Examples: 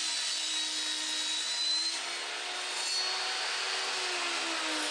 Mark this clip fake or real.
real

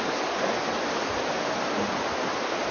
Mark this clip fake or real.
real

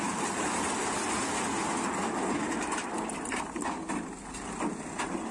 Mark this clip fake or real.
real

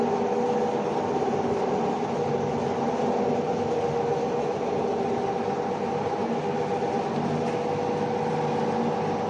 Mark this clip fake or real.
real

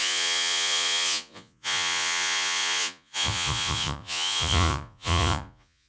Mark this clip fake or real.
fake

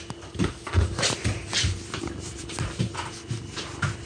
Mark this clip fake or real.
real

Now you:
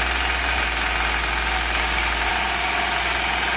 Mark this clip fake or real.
real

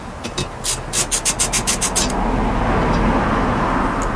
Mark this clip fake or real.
real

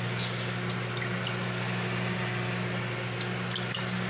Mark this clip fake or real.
real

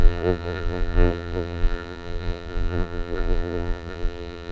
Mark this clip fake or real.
fake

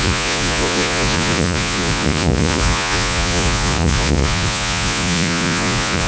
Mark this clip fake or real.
fake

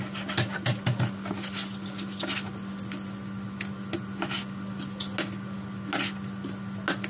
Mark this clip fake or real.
real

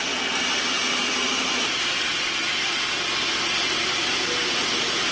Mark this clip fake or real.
real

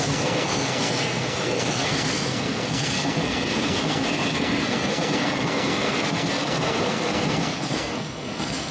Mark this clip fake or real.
fake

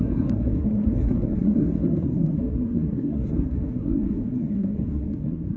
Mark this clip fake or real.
fake